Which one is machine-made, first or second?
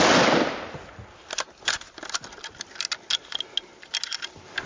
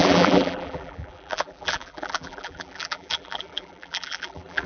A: second